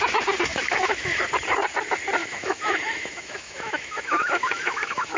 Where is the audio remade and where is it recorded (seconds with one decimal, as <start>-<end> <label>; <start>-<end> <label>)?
0.0-0.5 recorded; 0.5-1.2 remade; 1.2-2.2 recorded; 2.2-5.2 remade